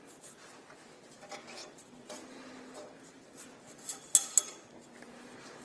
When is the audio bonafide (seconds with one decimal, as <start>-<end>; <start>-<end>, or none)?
0.0-5.6